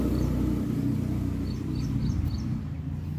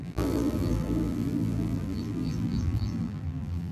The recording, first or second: first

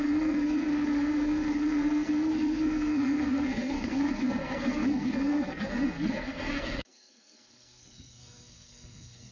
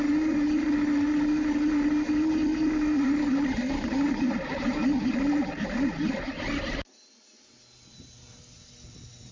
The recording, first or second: second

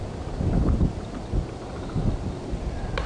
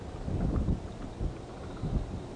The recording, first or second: second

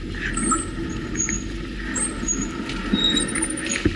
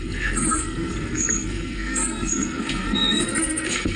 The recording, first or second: first